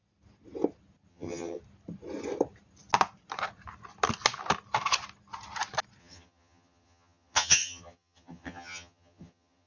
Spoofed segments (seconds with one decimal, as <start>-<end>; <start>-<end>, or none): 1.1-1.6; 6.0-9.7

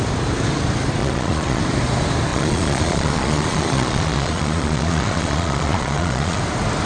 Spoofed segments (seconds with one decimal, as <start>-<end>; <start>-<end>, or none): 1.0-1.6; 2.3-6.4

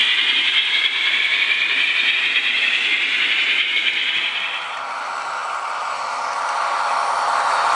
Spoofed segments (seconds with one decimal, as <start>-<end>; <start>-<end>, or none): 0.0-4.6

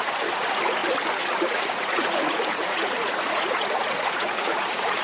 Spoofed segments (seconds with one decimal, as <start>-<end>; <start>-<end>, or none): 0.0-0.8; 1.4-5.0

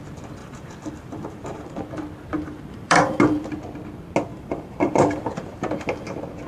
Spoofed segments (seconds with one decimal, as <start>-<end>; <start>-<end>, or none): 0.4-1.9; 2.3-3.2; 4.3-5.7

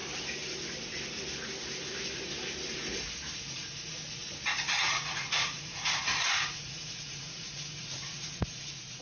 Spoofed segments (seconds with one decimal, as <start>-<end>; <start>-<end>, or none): 3.4-4.2; 4.8-9.0